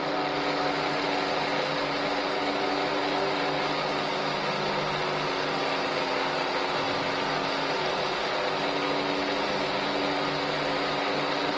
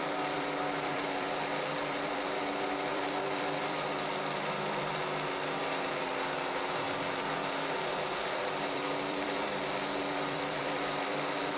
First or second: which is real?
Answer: first